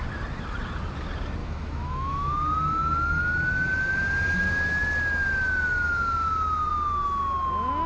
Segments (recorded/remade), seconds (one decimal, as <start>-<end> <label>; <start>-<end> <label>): 0.0-1.4 recorded; 1.4-2.3 remade; 2.3-7.9 recorded